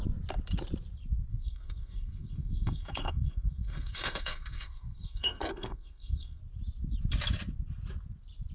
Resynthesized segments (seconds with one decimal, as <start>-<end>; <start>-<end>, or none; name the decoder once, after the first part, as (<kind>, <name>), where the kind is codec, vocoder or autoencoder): 1.3-6.4 (codec, SNAC)